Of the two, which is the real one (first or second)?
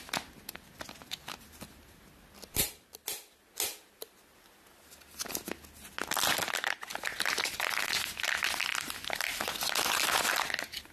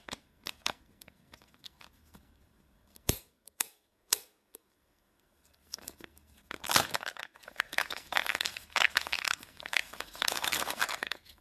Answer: first